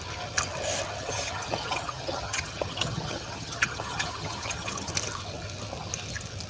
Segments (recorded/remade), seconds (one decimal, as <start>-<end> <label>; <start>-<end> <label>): 0.0-1.0 recorded; 1.0-4.9 remade; 4.9-6.5 recorded

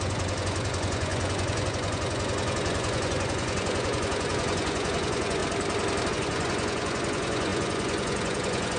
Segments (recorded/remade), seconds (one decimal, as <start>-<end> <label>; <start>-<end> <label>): 0.0-5.4 remade; 5.4-6.1 recorded; 6.1-8.8 remade

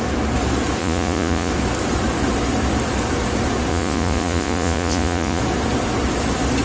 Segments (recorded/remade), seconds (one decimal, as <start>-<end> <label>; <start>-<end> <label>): 0.0-0.8 recorded; 0.8-1.5 remade; 1.5-3.7 recorded; 3.7-5.4 remade; 5.4-6.6 recorded

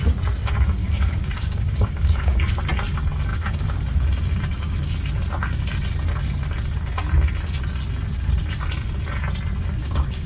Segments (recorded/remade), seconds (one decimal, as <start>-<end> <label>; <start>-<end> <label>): 0.0-0.8 recorded; 0.8-2.6 remade; 2.6-3.3 recorded; 3.3-3.8 remade; 3.8-9.8 recorded; 9.8-10.3 remade

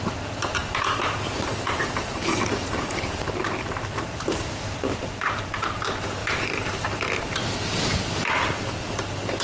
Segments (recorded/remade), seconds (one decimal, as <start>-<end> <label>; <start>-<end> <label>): 0.0-0.6 recorded; 0.6-5.8 remade; 5.8-6.2 recorded; 6.2-6.8 remade; 6.8-9.4 recorded

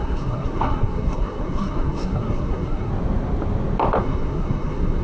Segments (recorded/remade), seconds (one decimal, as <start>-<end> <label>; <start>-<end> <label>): 0.0-2.9 remade; 2.9-4.0 recorded; 4.0-5.0 remade

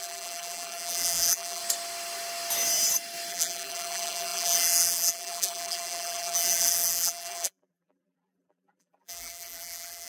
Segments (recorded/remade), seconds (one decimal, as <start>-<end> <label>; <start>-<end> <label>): 0.0-1.6 remade; 1.6-3.3 recorded; 3.3-10.1 remade

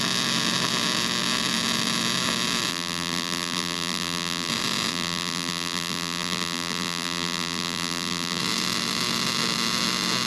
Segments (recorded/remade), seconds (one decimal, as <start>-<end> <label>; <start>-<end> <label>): 0.0-2.7 recorded; 2.7-4.5 remade; 4.5-4.9 recorded; 4.9-8.4 remade; 8.4-10.3 recorded